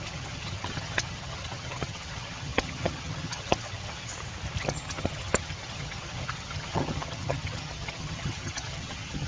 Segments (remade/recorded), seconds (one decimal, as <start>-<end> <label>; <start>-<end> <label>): 0.0-4.1 remade; 4.1-4.6 recorded; 4.6-9.3 remade

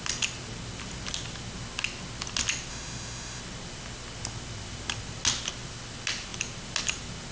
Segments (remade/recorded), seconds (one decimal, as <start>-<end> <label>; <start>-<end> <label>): 0.0-2.7 recorded; 2.7-3.4 remade; 3.4-7.3 recorded

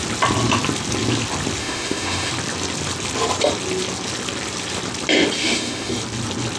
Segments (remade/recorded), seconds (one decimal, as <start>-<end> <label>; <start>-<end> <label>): 0.0-1.6 recorded; 1.6-2.3 remade; 2.3-5.4 recorded; 5.4-5.9 remade; 5.9-6.6 recorded

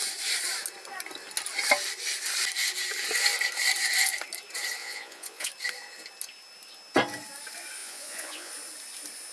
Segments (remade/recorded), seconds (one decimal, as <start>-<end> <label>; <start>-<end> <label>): 0.0-4.8 recorded; 4.8-5.5 remade; 5.5-7.8 recorded; 7.8-8.5 remade; 8.5-9.3 recorded

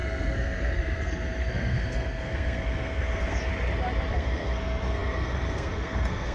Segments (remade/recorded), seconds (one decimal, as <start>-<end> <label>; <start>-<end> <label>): 0.0-3.5 remade; 3.5-4.1 recorded; 4.1-6.3 remade

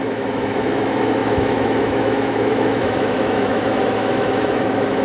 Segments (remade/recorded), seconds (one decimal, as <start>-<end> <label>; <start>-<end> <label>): 0.0-5.0 remade

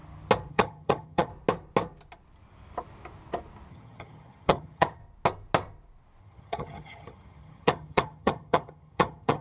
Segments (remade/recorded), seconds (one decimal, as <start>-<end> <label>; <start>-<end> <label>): 0.0-0.5 recorded; 0.5-1.3 remade; 1.3-3.7 recorded; 3.7-5.0 remade; 5.0-6.2 recorded; 6.2-9.4 remade

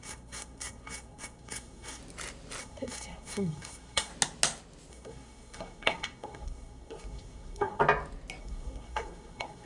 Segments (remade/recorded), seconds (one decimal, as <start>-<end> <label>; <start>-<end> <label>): 0.0-2.0 remade; 2.0-2.6 recorded; 2.6-4.1 remade; 4.1-4.9 recorded; 4.9-7.8 remade; 7.8-8.4 recorded; 8.4-9.7 remade